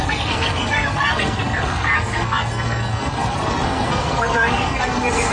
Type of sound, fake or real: fake